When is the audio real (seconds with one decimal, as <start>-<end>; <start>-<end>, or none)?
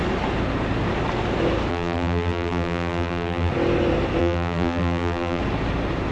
0.0-1.7; 3.5-4.2; 5.4-6.1